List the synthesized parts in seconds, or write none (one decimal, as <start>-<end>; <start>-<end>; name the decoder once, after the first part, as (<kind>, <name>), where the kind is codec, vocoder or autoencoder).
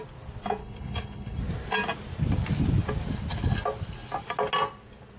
0.6-1.4 (codec, HILCodec)